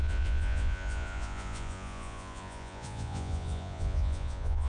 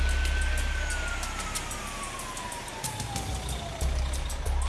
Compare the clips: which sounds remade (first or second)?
first